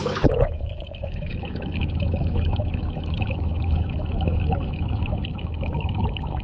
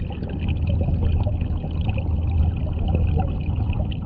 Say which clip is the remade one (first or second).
first